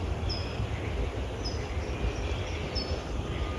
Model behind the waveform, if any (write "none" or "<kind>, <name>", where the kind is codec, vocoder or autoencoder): none